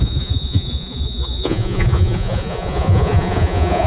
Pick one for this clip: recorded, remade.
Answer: remade